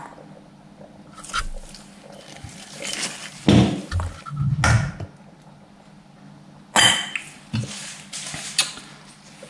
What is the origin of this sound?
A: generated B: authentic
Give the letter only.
B